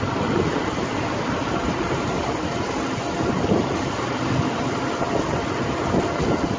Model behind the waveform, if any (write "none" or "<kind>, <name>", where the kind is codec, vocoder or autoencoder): none